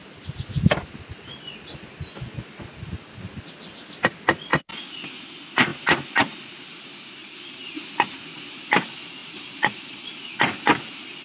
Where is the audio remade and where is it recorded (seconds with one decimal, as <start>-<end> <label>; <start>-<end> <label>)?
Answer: 0.0-7.2 recorded; 7.2-8.1 remade; 8.1-9.2 recorded; 9.2-10.3 remade; 10.3-11.2 recorded